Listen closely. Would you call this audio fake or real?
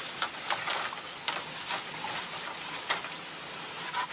real